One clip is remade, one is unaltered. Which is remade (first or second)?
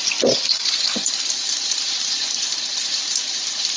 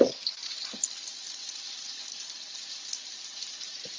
first